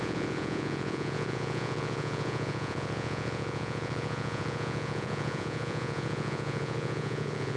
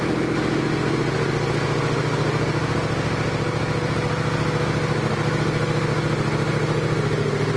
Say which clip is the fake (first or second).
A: first